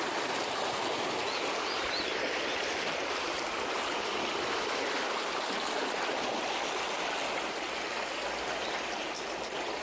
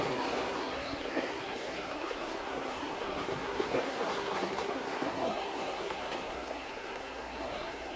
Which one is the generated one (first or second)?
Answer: second